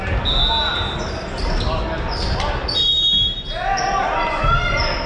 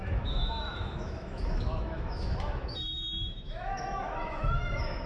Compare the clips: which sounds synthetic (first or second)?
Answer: second